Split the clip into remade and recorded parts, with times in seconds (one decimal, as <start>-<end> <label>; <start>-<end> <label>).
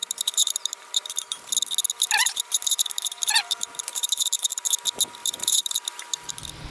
0.0-1.5 remade; 1.5-2.2 recorded; 2.2-4.7 remade; 4.7-5.2 recorded; 5.2-6.3 remade; 6.3-6.7 recorded